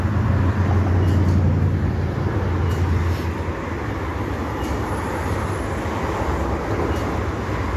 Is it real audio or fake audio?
real